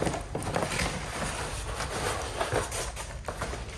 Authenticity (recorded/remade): recorded